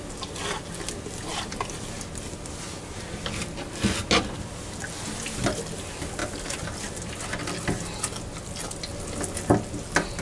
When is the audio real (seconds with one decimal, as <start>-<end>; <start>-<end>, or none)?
0.0-10.2